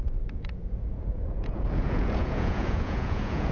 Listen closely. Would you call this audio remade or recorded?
remade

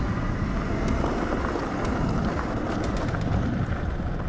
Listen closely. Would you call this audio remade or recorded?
recorded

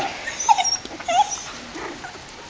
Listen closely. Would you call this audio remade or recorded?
recorded